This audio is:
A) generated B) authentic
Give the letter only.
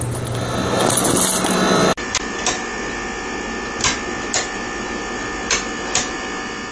B